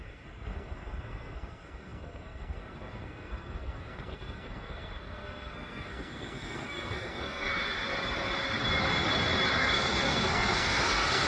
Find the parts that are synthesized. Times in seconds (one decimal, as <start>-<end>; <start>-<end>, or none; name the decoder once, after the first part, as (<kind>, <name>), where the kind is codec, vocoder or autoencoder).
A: 0.0-7.5 (codec, SNAC); 9.6-11.3